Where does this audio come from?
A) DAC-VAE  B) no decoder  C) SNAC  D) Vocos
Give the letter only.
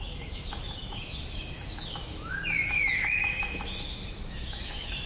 A